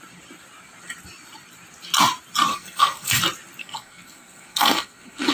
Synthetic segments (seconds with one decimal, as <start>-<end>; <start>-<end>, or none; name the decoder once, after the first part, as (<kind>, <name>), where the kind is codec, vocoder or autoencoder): 2.5-3.2 (codec, SNAC); 3.6-5.3